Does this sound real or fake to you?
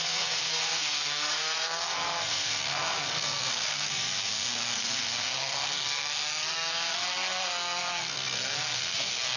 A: fake